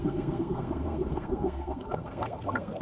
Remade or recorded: remade